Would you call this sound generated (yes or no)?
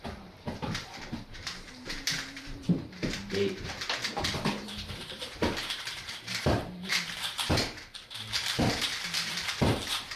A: yes